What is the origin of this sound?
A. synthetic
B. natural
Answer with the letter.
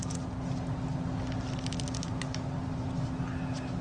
B